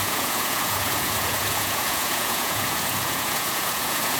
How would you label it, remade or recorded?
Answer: remade